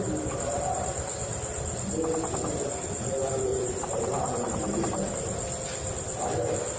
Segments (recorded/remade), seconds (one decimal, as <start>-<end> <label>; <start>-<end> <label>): 0.0-3.5 recorded; 3.5-5.1 remade; 5.1-6.8 recorded